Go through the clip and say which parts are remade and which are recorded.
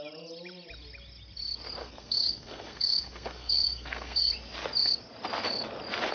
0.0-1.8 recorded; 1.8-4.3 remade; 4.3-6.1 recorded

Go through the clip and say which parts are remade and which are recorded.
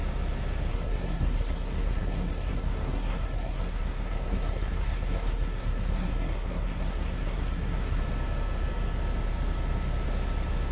0.0-0.7 recorded; 0.7-8.0 remade; 8.0-10.7 recorded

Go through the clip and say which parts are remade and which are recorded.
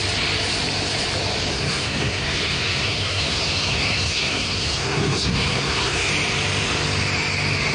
0.0-1.5 recorded; 1.5-6.1 remade; 6.1-7.7 recorded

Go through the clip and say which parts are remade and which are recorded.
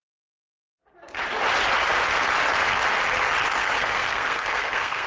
0.0-0.4 remade; 0.4-3.5 recorded; 3.5-5.1 remade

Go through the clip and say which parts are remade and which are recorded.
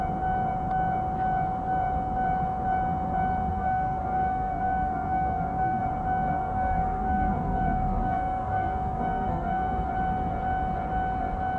0.0-3.5 recorded; 3.5-5.8 remade; 5.8-6.3 recorded; 6.3-9.9 remade; 9.9-11.6 recorded